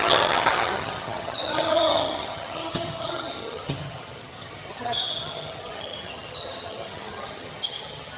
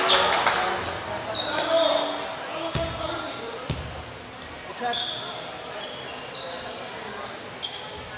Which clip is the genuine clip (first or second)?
second